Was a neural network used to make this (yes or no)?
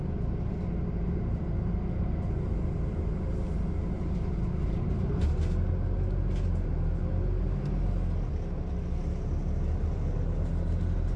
no